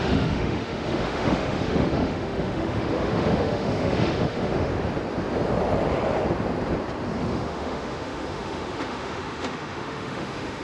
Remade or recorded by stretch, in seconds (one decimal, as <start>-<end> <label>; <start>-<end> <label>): 0.0-4.7 remade; 4.7-7.2 recorded; 7.2-10.6 remade